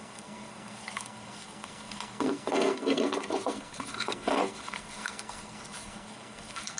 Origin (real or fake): fake